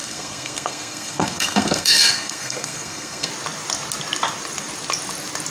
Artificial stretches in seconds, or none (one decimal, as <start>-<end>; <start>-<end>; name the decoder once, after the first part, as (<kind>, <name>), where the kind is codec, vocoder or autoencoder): 0.0-3.3 (codec, SNAC)